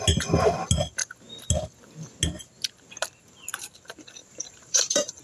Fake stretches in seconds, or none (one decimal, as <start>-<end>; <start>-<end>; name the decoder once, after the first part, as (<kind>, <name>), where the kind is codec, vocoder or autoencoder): 4.2-5.2 (vocoder, BigVGAN v2)